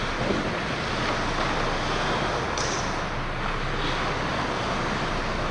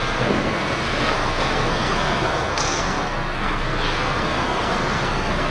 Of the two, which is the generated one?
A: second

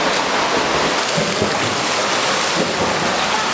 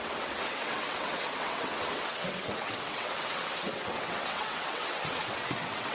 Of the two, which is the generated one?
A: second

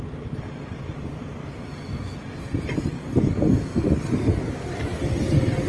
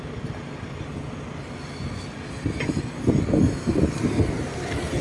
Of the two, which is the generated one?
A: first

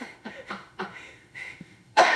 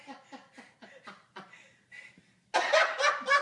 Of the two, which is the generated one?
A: first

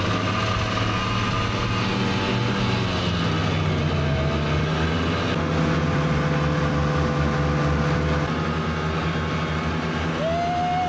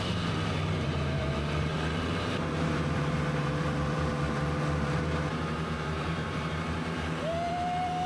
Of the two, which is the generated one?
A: second